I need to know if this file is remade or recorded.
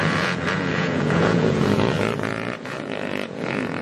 remade